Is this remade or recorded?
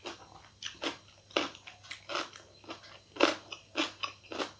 recorded